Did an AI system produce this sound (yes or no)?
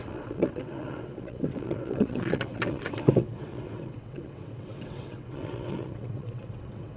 yes